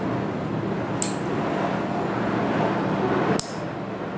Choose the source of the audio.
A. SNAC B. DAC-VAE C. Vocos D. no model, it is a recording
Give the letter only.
D